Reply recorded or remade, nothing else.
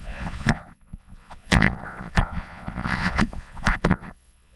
remade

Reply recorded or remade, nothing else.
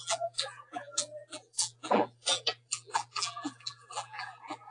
remade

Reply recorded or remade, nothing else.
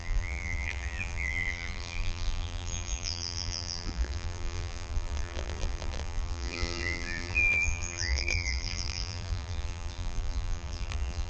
remade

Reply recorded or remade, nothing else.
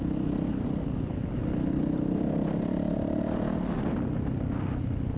recorded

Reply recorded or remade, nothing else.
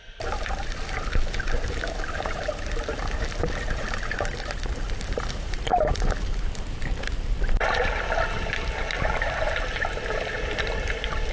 remade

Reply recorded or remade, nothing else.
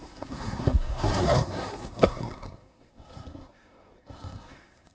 remade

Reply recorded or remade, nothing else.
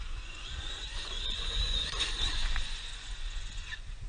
remade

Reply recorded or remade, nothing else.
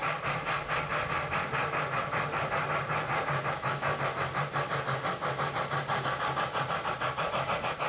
recorded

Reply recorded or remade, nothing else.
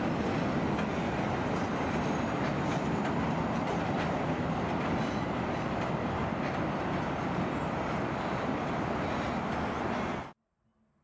recorded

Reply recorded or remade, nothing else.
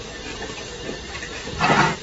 recorded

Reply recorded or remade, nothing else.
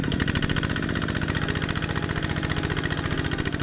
recorded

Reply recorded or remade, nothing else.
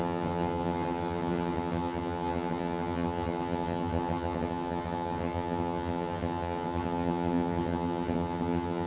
remade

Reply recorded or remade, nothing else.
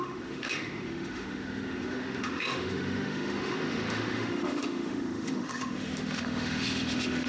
remade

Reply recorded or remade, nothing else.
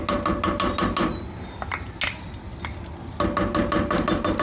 recorded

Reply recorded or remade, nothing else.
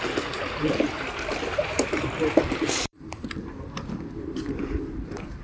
remade